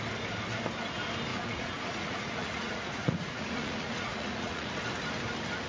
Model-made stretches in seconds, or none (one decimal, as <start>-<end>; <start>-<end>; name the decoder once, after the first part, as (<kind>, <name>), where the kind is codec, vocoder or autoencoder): 1.3-4.7 (vocoder, Vocos)

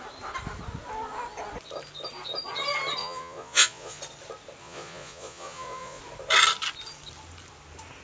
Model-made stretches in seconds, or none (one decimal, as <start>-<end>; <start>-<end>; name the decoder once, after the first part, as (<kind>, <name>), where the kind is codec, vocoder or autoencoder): 3.0-4.0 (vocoder, Vocos); 4.6-6.0

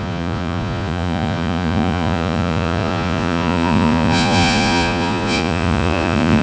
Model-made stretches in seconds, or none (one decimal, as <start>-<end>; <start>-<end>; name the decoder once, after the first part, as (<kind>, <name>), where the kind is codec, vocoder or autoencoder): 0.0-6.4 (vocoder, Vocos)

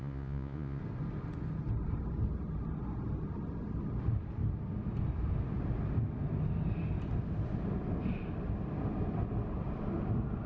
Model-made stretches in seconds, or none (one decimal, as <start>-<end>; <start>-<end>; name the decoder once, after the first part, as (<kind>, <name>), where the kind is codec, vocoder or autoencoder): 0.0-0.8 (vocoder, Vocos)

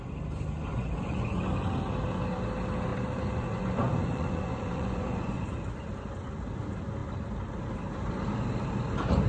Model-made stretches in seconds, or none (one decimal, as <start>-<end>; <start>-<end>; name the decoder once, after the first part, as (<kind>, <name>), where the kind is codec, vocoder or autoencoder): 0.7-1.4 (vocoder, Vocos); 2.9-5.4